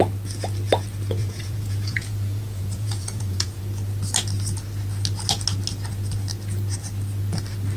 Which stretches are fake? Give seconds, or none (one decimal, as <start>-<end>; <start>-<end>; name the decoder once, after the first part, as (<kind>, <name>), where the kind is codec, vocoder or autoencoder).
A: 1.2-3.6 (vocoder, Vocos)

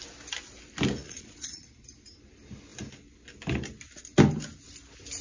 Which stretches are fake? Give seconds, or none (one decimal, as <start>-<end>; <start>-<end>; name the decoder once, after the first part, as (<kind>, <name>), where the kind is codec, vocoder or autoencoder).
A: 1.0-1.7 (vocoder, Vocos)

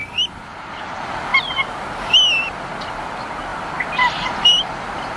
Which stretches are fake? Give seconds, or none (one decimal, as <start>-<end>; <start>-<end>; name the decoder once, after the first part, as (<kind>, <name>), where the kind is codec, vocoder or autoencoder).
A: none

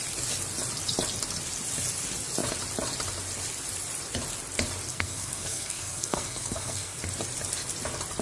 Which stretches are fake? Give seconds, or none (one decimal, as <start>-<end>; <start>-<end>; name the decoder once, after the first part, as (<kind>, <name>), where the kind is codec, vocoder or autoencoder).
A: 4.9-7.0 (codec, SNAC)

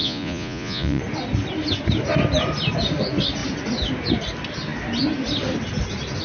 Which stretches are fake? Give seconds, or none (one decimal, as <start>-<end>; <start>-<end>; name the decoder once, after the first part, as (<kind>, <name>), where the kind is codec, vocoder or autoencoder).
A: 0.0-1.0 (vocoder, Vocos)